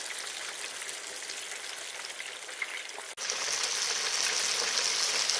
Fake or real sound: real